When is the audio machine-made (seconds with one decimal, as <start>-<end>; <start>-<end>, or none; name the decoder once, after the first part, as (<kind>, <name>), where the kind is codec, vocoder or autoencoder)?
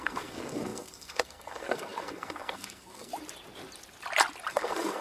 0.0-3.1 (codec, SNAC); 4.5-5.0